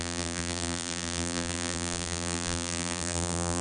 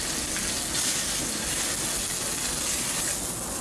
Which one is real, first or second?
second